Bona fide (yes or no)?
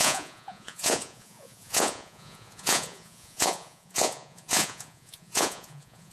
no